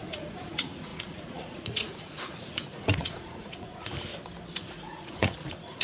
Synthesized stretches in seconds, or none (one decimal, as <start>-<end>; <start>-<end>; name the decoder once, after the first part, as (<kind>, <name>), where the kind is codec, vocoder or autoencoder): 0.0-3.9 (vocoder, Vocos); 4.5-5.8